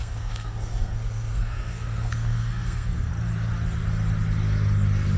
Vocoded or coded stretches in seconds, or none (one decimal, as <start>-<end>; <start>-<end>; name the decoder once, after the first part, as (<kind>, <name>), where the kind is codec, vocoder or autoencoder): 0.0-3.1 (codec, SNAC)